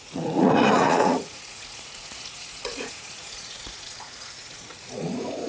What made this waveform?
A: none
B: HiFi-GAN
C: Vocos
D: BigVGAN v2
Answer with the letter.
C